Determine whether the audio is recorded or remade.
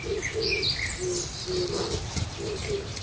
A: recorded